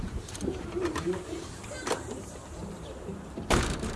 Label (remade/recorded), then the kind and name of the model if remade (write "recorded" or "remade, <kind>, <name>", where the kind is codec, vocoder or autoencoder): remade, vocoder, BigVGAN v2